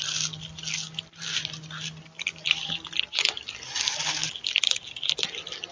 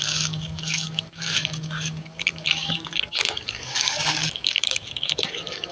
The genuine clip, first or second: first